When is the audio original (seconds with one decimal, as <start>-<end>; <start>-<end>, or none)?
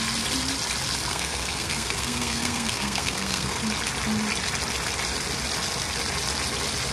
0.0-1.1; 3.6-6.9